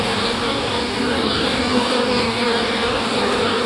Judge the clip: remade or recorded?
remade